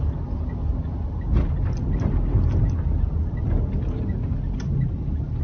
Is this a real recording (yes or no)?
yes